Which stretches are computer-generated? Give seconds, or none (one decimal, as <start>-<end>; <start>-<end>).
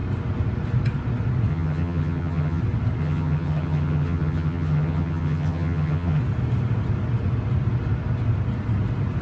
1.5-2.6; 3.0-6.2